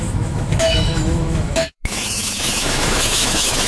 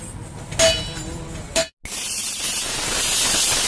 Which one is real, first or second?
second